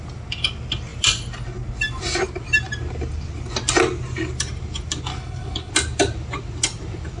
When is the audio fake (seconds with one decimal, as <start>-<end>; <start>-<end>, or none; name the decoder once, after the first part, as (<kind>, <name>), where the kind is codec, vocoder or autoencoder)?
5.1-5.7 (codec, HILCodec)

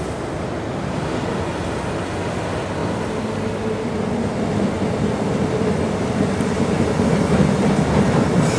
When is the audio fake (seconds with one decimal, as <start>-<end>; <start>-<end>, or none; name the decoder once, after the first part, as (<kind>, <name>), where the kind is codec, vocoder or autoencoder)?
none